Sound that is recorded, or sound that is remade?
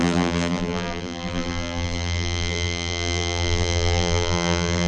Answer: remade